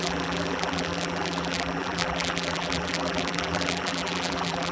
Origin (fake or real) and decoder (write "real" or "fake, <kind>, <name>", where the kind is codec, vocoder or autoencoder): fake, vocoder, BigVGAN v2